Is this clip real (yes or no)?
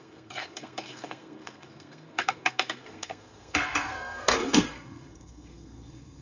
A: no